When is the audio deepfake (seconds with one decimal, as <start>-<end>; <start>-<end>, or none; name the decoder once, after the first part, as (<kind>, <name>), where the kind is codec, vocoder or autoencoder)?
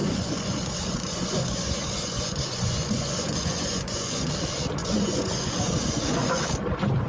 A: 0.0-4.3 (vocoder, Vocos); 4.8-6.4